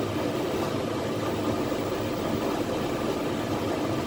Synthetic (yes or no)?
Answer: no